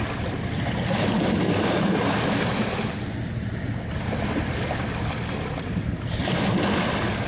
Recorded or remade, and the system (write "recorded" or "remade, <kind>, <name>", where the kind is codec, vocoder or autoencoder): recorded